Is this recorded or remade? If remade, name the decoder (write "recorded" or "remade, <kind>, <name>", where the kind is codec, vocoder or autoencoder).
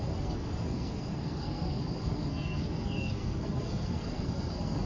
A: remade, codec, SNAC